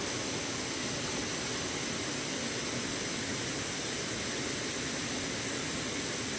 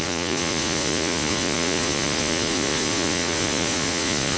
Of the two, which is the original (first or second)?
first